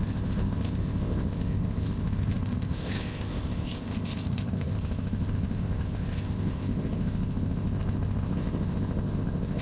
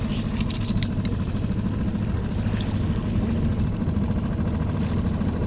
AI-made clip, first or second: first